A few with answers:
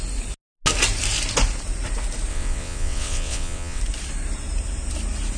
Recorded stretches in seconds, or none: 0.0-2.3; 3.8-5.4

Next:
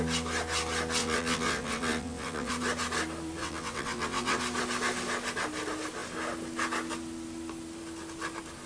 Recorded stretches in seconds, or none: 0.0-1.0; 2.5-3.4; 4.4-8.7

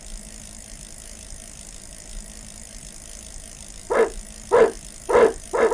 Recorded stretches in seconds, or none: 0.0-5.7